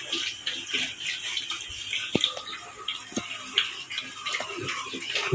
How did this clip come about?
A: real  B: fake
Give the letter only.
A